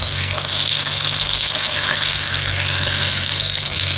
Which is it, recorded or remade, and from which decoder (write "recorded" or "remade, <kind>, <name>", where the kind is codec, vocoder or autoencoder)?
remade, codec, SNAC